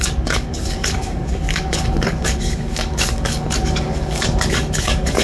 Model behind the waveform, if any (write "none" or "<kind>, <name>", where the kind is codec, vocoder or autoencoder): codec, DAC